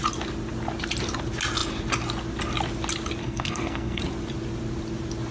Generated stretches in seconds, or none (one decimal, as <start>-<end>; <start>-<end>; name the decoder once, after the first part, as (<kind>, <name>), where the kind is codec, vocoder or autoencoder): 3.2-4.0 (codec, SNAC)